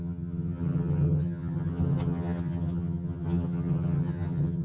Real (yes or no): no